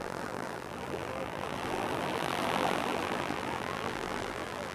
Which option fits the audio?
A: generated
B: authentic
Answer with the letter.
A